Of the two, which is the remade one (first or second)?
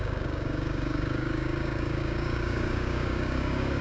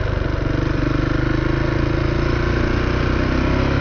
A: first